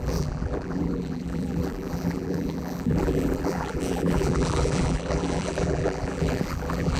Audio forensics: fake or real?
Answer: fake